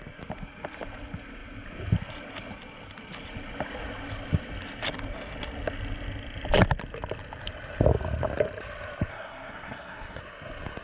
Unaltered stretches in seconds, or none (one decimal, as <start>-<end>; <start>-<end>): 0.0-9.1; 10.2-10.8